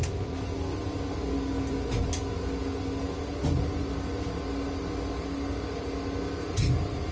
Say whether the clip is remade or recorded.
recorded